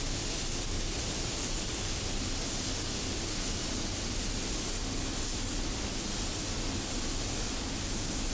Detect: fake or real real